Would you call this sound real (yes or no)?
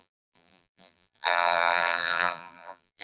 no